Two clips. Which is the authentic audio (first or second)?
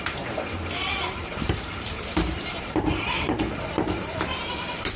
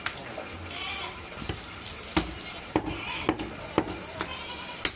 second